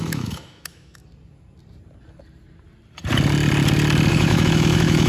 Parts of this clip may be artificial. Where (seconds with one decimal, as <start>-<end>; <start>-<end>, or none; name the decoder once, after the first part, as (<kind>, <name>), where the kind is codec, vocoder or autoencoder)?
0.0-1.0 (autoencoder, DAC-VAE); 4.1-5.1

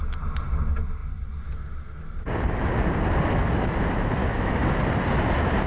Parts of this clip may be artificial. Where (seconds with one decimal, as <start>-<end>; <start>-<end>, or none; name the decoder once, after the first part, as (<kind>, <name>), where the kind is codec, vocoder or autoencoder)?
4.2-4.7 (autoencoder, DAC-VAE)

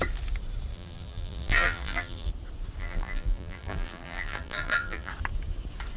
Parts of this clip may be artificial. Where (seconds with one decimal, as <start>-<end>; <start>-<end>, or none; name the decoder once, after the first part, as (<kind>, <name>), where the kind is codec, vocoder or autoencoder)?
0.7-2.3 (vocoder, BigVGAN v2); 2.8-5.1

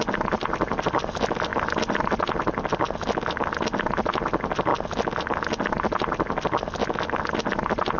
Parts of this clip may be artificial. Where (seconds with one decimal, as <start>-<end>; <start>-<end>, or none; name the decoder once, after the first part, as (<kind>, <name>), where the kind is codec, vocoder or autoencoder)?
none

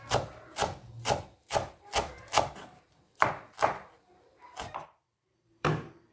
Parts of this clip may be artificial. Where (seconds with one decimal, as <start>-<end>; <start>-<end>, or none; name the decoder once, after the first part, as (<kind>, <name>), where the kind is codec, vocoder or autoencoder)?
0.0-0.6 (vocoder, BigVGAN v2); 4.3-6.1

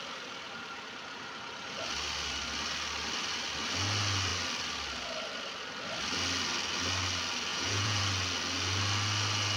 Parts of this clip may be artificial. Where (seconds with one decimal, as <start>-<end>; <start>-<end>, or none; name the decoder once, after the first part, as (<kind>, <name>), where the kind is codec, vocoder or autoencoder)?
7.5-8.0 (vocoder, Vocos)

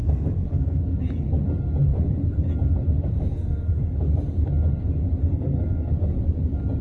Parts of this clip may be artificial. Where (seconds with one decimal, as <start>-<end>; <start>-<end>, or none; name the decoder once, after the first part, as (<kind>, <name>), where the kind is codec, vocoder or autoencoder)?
0.0-1.0 (codec, SNAC); 3.3-4.0; 5.2-5.9